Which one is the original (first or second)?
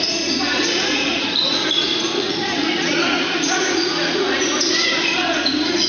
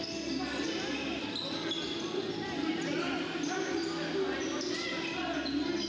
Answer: second